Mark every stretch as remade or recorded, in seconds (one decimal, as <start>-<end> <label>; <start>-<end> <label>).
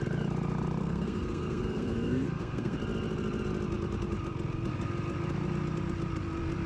0.0-0.8 recorded; 0.8-2.8 remade; 2.8-6.7 recorded